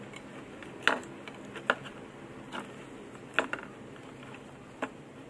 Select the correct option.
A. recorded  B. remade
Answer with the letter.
A